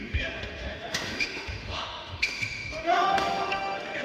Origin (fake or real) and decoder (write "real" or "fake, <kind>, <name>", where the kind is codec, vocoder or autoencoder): fake, autoencoder, DAC-VAE